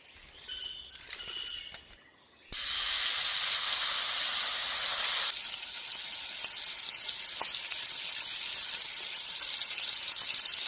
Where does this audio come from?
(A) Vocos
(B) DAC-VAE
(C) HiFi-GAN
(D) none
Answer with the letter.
D